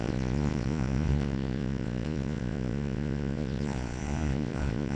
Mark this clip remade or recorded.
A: remade